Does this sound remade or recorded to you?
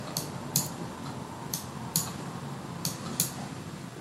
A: recorded